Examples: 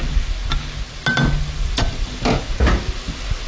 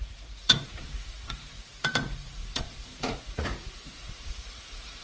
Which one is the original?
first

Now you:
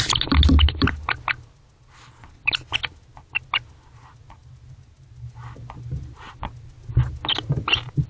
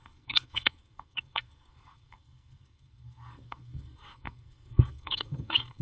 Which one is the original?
first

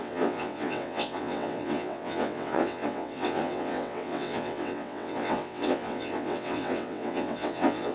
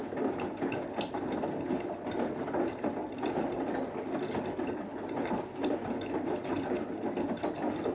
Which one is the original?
second